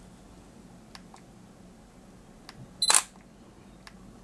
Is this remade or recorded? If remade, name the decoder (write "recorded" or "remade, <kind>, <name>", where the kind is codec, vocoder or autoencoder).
recorded